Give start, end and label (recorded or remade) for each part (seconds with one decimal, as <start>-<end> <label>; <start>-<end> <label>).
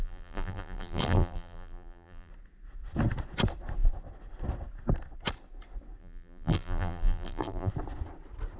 0.0-2.3 remade; 2.3-6.0 recorded; 6.0-7.7 remade; 7.7-8.6 recorded